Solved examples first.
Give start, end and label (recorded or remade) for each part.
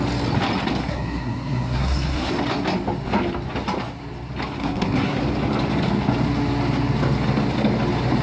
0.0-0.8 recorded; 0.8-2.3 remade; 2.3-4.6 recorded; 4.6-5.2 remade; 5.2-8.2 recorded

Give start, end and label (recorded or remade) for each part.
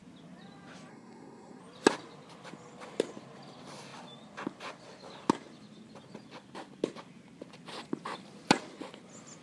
0.0-0.9 recorded; 0.9-1.6 remade; 1.6-9.4 recorded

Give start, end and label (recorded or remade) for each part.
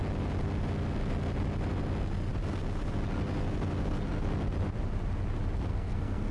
0.0-5.7 recorded; 5.7-6.3 remade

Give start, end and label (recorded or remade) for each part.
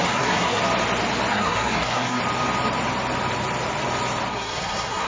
0.0-0.6 remade; 0.6-1.3 recorded; 1.3-2.2 remade; 2.2-4.3 recorded; 4.3-5.1 remade